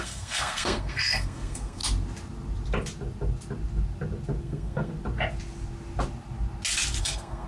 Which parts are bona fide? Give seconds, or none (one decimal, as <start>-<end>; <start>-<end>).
1.8-4.4; 4.9-7.0